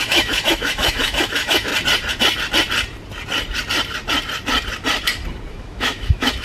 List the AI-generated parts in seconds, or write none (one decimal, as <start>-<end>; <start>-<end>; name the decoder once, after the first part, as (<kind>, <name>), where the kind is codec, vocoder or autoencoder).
0.0-1.7 (autoencoder, DAC-VAE); 5.5-6.4